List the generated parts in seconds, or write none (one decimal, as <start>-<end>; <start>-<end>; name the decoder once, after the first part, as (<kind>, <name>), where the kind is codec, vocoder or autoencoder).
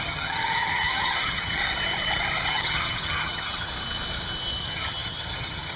0.0-1.6 (vocoder, HiFi-GAN); 2.5-3.7; 4.6-5.8